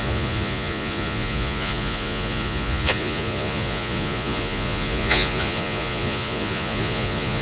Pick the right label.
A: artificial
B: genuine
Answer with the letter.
A